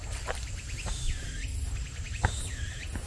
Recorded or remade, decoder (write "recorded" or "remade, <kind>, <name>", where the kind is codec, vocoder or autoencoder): recorded